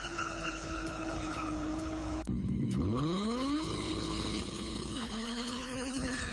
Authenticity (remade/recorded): remade